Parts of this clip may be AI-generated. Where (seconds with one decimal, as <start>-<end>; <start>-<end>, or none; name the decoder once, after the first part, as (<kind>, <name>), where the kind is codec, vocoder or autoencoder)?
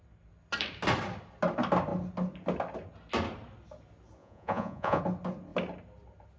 4.2-5.0 (vocoder, Vocos)